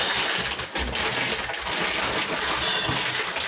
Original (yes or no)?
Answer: yes